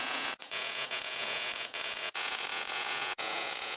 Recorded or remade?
remade